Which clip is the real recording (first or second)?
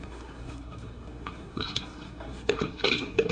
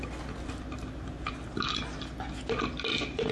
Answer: second